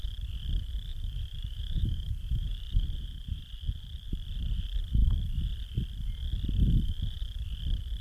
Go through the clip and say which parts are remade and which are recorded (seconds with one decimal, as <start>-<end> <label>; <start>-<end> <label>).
0.0-0.9 recorded; 0.9-3.4 remade; 3.4-8.0 recorded